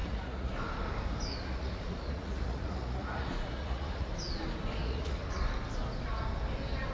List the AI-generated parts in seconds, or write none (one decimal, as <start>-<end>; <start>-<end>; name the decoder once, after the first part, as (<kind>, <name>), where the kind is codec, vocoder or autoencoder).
0.0-0.5 (vocoder, Vocos); 1.3-4.1; 4.8-5.4